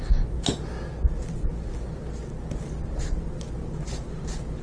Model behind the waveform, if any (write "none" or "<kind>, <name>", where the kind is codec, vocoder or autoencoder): none